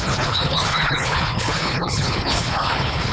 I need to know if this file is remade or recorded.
remade